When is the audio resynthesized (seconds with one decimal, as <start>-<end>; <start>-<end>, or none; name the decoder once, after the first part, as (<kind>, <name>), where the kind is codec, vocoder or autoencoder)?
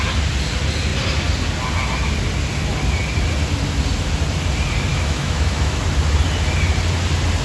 4.9-5.8 (autoencoder, DAC-VAE)